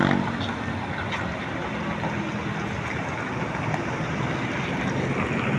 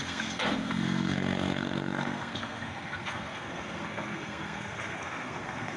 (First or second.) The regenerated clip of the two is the second